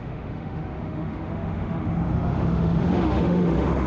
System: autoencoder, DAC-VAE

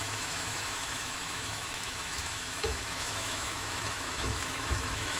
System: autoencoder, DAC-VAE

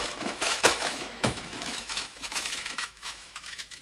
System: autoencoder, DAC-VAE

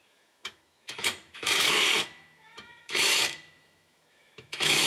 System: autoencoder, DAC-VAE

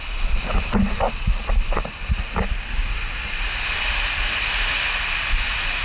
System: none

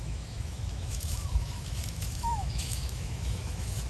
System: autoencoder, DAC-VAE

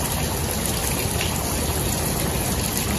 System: none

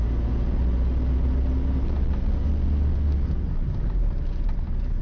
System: none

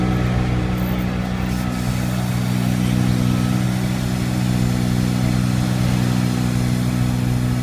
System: none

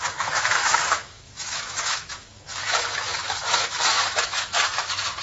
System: autoencoder, DAC-VAE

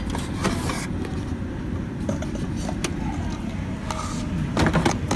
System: none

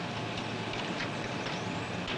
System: none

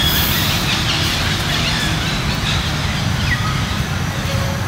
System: none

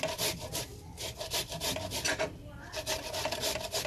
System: none